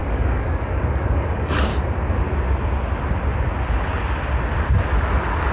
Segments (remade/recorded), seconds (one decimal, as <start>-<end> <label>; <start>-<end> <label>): 0.0-1.7 remade; 1.7-5.0 recorded; 5.0-5.5 remade